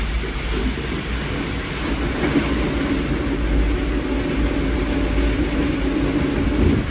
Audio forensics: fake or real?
real